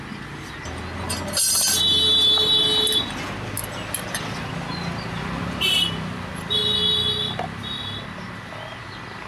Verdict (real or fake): real